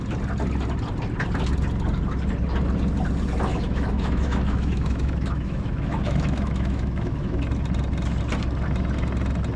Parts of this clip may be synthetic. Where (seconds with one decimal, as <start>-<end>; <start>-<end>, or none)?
3.5-7.4

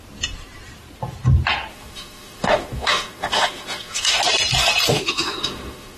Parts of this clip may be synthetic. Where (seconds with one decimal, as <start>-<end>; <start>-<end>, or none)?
1.7-4.2; 4.9-6.0

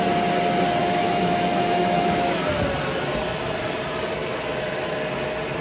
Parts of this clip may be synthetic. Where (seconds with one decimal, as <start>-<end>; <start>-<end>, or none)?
0.8-2.3; 4.2-4.9

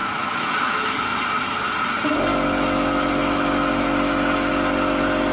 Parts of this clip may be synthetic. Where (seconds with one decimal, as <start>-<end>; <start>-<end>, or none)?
0.0-1.0; 2.3-3.1

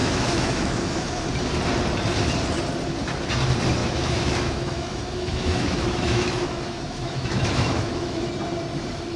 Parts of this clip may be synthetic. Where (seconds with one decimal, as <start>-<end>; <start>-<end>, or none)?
0.0-1.3; 3.8-8.3